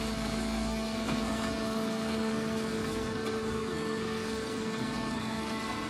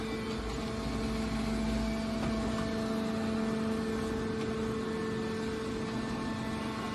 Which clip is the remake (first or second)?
first